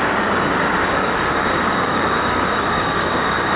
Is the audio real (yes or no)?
no